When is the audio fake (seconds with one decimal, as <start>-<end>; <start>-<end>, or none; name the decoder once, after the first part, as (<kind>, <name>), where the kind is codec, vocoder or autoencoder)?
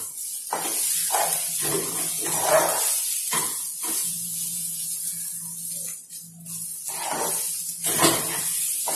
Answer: 4.0-5.2 (vocoder, Vocos)